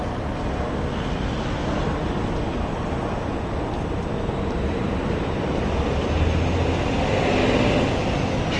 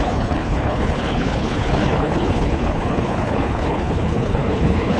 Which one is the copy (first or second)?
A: second